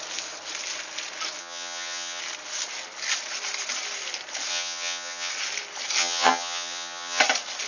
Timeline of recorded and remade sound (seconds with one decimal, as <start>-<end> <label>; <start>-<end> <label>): 0.0-1.4 recorded; 1.4-2.2 remade; 2.2-4.5 recorded; 4.5-5.3 remade; 5.3-6.0 recorded; 6.0-7.2 remade; 7.2-7.7 recorded